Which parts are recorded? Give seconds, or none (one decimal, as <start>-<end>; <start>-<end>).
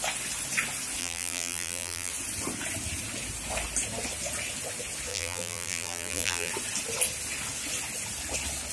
0.0-1.0; 2.1-5.1; 6.5-8.7